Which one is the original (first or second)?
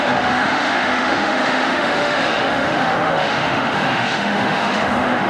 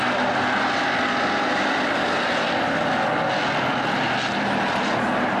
second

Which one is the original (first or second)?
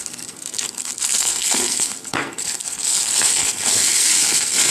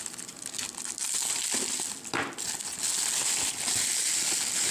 second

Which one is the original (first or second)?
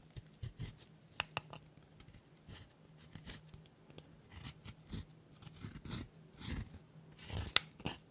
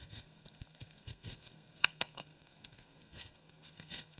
first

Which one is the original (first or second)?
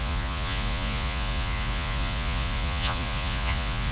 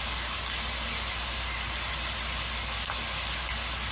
second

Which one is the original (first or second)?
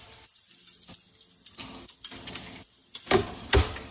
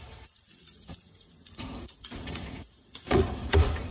first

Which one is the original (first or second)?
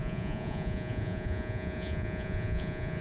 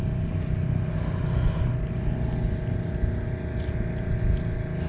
second